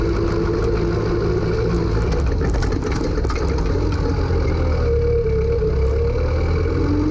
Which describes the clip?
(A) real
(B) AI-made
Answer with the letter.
A